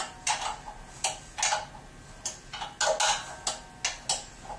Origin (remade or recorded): recorded